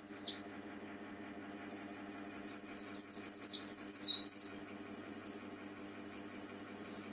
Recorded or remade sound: recorded